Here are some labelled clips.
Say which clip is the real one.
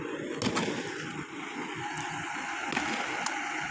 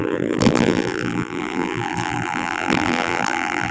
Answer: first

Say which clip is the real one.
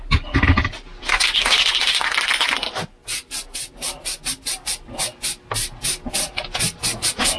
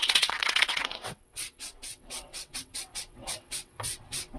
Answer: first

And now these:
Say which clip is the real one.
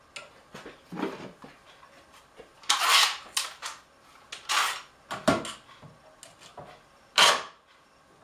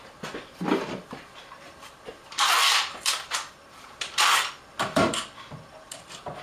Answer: first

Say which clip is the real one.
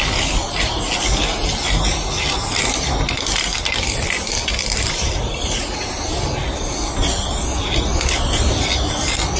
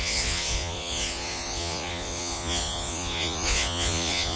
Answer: first